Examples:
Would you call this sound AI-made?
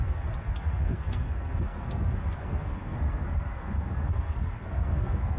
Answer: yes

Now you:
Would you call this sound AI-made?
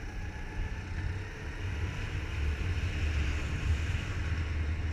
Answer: no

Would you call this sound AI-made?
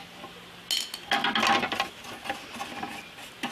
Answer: no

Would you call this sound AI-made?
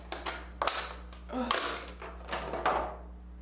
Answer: no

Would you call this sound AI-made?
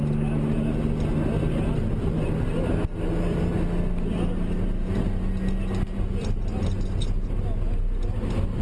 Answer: no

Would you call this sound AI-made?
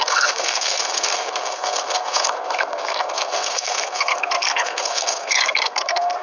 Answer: yes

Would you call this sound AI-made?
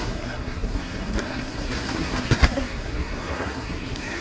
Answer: yes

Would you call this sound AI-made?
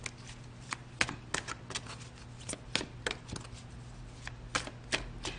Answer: no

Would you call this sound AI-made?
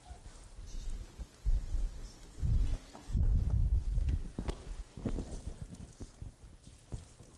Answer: no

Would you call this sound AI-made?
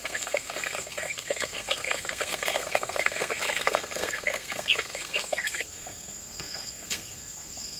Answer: yes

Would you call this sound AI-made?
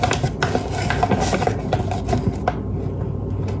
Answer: no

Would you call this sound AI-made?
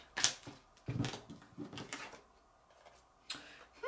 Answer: no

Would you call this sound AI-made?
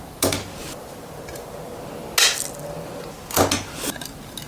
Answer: no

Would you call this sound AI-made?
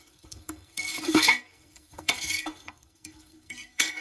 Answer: yes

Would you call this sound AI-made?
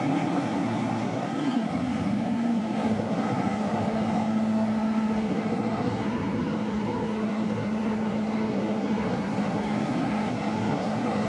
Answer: yes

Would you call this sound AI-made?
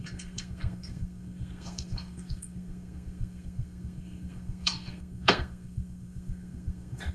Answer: yes